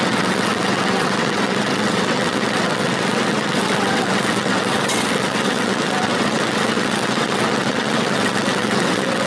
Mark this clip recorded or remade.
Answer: remade